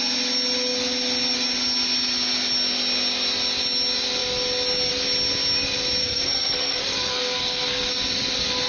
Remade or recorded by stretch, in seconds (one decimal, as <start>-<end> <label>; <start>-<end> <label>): 0.0-6.0 recorded; 6.0-7.9 remade; 7.9-8.7 recorded